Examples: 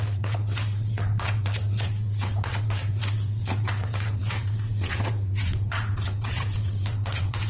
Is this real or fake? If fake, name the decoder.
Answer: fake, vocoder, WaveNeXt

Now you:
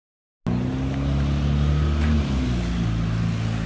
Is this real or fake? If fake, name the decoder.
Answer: real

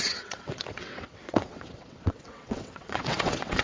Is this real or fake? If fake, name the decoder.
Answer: fake, vocoder, WaveNeXt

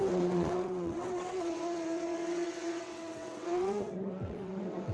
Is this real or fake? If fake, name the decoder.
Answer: fake, vocoder, WaveNeXt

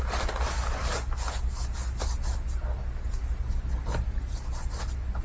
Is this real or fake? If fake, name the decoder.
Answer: real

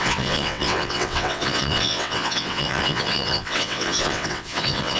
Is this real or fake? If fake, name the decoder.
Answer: fake, vocoder, WaveNeXt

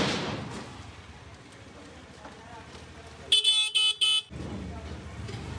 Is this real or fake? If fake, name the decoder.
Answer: real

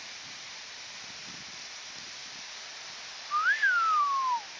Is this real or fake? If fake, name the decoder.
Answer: real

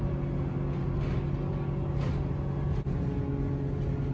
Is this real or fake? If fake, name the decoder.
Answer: real